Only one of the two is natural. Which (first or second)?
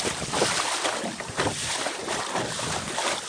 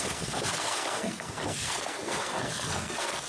first